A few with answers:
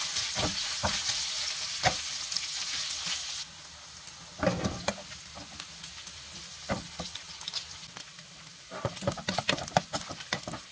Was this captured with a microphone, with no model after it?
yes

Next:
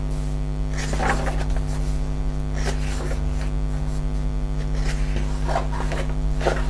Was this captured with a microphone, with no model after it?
yes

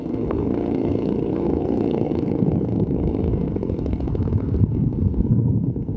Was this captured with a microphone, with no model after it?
no